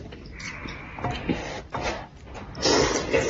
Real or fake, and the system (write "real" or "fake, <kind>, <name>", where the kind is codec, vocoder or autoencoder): real